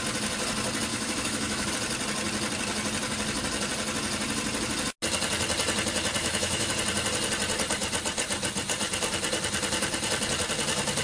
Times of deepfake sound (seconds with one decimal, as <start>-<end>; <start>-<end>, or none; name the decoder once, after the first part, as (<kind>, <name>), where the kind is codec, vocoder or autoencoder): 0.9-1.7 (autoencoder, DAC-VAE); 6.2-6.7